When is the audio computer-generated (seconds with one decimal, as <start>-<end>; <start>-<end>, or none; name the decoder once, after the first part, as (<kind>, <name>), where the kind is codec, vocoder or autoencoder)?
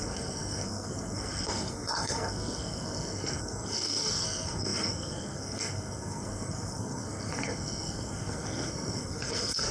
0.0-9.7 (codec, SNAC)